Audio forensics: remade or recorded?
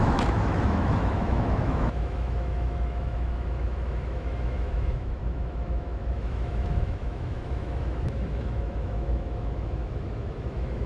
remade